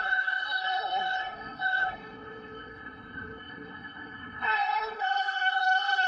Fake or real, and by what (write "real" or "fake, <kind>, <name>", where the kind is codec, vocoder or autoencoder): fake, codec, SNAC